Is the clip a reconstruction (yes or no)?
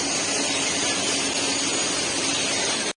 no